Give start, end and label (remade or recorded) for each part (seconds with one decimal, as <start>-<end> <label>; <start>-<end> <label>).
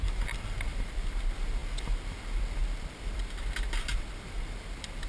0.0-0.7 recorded; 0.7-1.2 remade; 1.2-2.6 recorded; 2.6-5.1 remade